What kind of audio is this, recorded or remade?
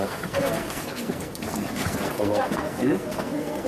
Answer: remade